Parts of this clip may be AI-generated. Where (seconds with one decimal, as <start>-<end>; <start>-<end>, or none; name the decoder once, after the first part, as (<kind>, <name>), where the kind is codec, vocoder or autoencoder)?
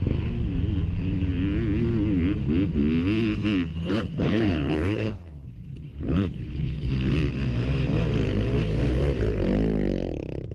3.7-6.9 (codec, HILCodec)